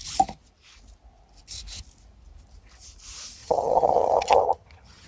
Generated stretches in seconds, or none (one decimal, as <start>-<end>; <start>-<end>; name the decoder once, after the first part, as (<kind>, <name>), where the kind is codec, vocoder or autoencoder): 3.4-5.1 (vocoder, HiFi-GAN)